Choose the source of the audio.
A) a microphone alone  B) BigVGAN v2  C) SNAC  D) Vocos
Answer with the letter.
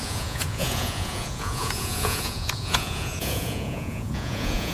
D